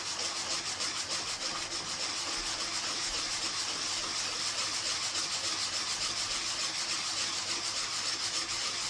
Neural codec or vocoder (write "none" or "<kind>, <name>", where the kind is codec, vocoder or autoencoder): none